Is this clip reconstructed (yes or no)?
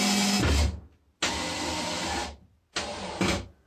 no